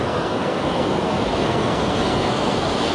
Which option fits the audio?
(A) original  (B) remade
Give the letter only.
B